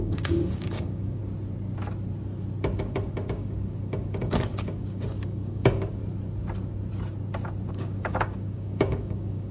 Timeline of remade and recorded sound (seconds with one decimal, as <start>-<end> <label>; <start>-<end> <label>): 0.0-1.2 remade; 1.2-2.8 recorded; 2.8-6.0 remade; 6.0-7.7 recorded; 7.7-9.5 remade